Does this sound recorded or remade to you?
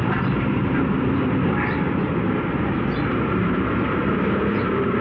remade